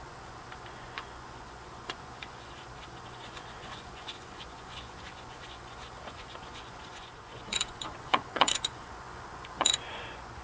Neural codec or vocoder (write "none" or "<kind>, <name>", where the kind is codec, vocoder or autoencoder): vocoder, Vocos